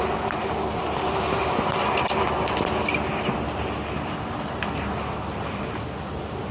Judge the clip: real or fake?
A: real